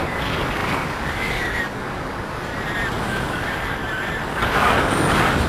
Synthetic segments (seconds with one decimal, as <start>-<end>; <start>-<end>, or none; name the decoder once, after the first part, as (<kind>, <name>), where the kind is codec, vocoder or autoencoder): 0.0-2.5 (codec, DAC); 3.0-3.8; 4.3-5.5